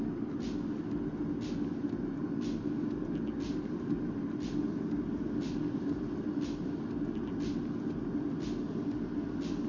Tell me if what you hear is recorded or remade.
recorded